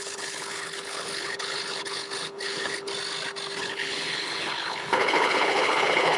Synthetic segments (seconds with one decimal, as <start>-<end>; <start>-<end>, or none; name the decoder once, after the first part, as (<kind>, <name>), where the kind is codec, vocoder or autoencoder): 0.0-2.9 (codec, HILCodec); 3.6-6.2